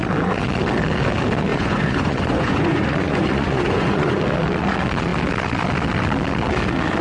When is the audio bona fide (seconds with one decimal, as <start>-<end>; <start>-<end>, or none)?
0.0-1.5; 4.2-7.0